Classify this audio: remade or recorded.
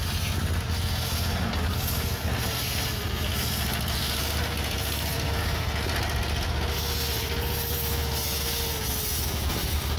recorded